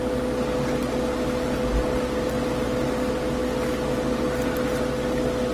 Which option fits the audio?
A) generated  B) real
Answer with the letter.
B